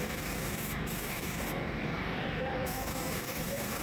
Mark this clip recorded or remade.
remade